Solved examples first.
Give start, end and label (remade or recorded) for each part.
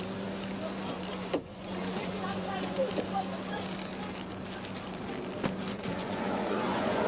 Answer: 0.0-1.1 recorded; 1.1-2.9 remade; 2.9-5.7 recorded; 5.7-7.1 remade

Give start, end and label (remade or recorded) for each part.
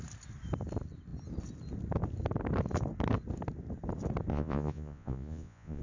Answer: 0.0-4.3 recorded; 4.3-5.8 remade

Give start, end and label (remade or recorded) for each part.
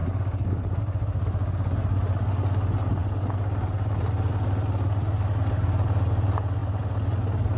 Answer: 0.0-7.6 recorded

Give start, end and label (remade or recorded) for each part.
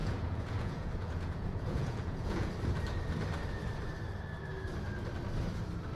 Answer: 0.0-2.5 remade; 2.5-6.0 recorded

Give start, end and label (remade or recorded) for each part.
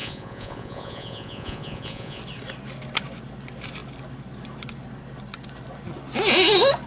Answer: 0.0-2.2 remade; 2.2-6.9 recorded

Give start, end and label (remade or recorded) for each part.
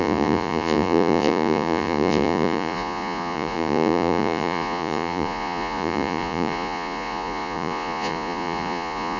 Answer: 0.0-9.2 remade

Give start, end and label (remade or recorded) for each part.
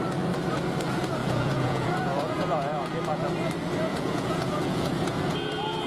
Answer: 0.0-1.2 recorded; 1.2-2.9 remade; 2.9-3.9 recorded; 3.9-5.5 remade; 5.5-5.9 recorded